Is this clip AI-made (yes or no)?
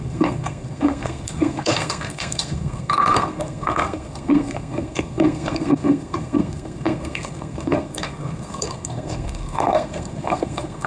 yes